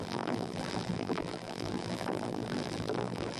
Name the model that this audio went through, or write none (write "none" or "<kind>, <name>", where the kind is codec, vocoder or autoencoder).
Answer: vocoder, BigVGAN v2